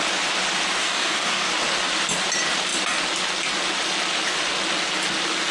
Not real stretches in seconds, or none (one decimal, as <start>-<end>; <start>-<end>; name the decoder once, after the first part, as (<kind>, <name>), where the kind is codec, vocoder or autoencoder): 0.8-1.5 (codec, DAC)